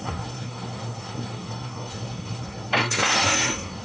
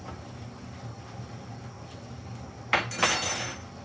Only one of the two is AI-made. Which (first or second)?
first